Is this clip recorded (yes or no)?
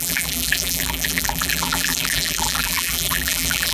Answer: no